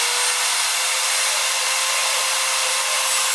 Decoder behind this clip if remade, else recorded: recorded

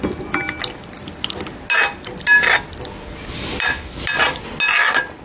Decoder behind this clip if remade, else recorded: recorded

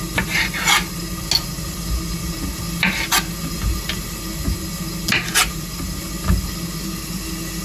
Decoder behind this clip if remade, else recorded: recorded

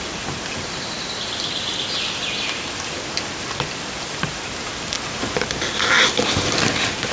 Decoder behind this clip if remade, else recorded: recorded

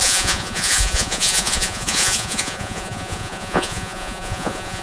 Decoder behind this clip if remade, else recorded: remade, vocoder, Vocos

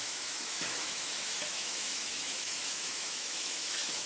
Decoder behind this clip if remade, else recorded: remade, autoencoder, DAC-VAE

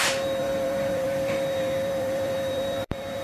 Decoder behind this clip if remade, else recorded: remade, vocoder, BigVGAN v2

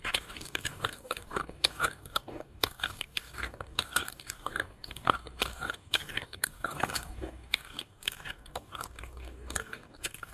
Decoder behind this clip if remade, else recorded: remade, codec, DAC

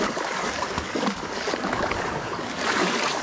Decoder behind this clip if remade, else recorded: remade, codec, DAC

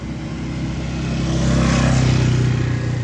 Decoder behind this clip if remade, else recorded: recorded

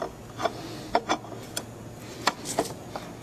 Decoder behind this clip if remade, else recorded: recorded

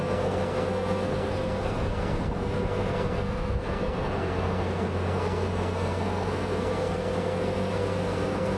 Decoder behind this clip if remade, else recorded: remade, codec, SNAC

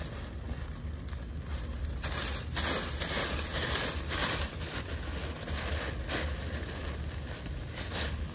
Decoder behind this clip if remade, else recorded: recorded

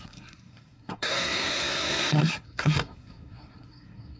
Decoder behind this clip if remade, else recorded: remade, codec, SNAC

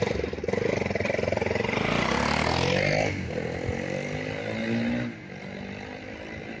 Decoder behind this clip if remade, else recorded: recorded